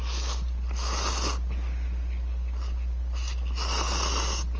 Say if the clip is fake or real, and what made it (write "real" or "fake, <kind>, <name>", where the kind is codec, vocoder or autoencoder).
real